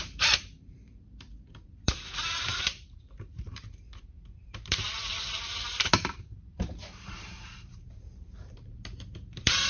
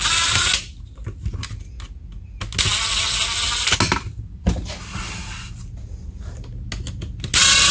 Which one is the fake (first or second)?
first